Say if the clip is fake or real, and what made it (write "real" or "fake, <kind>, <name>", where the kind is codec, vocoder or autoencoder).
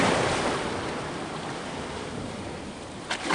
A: real